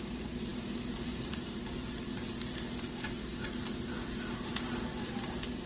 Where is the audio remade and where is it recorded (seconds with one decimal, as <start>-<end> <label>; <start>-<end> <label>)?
0.0-2.3 remade; 2.3-5.2 recorded; 5.2-5.7 remade